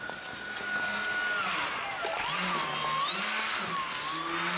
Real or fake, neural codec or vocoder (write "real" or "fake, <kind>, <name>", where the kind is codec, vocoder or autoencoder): real